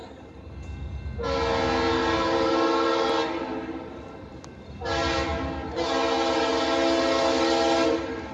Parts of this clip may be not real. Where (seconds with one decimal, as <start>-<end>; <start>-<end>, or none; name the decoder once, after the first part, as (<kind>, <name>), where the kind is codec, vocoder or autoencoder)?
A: 0.0-0.5 (vocoder, BigVGAN v2); 2.0-4.4